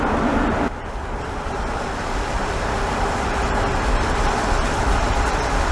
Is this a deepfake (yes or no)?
no